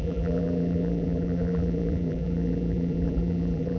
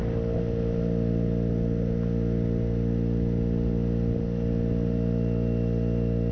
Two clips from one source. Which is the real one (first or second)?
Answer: second